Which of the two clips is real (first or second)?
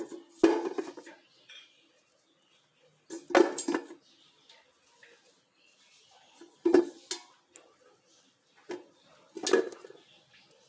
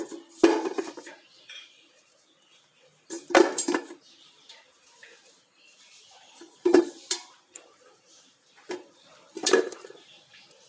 first